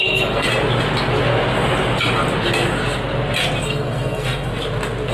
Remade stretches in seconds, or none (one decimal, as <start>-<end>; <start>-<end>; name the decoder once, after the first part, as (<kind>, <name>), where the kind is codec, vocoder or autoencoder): 0.0-0.5 (codec, SNAC); 3.6-4.5